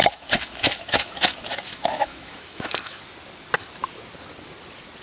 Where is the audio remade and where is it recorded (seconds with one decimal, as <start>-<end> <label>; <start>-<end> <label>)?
0.0-3.0 remade; 3.0-5.0 recorded